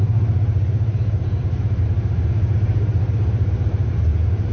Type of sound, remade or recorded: remade